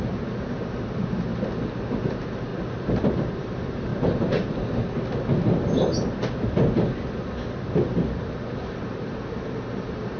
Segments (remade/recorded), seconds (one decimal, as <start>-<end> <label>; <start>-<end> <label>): 0.0-1.3 remade; 1.3-2.0 recorded; 2.0-2.5 remade; 2.5-3.1 recorded; 3.1-3.9 remade; 3.9-8.6 recorded; 8.6-10.2 remade